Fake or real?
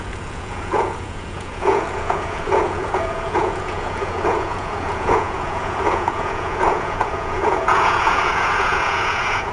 fake